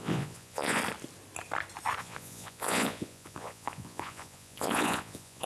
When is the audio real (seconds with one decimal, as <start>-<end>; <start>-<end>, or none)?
0.8-2.0